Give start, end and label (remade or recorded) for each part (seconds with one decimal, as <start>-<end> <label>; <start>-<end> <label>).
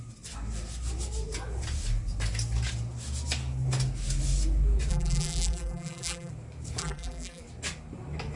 0.0-4.9 recorded; 4.9-6.3 remade; 6.3-6.8 recorded; 6.8-7.4 remade; 7.4-8.4 recorded